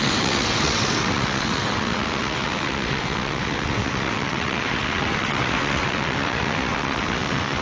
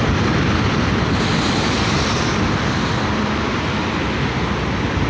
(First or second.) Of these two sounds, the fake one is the first